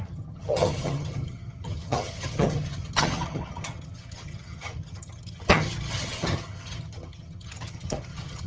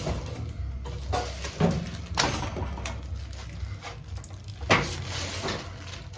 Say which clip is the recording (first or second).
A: second